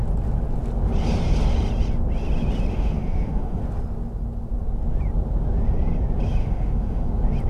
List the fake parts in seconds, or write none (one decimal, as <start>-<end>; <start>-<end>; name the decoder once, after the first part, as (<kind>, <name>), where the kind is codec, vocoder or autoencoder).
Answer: 2.7-3.6 (autoencoder, DAC-VAE); 6.4-7.1